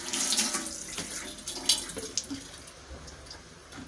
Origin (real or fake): real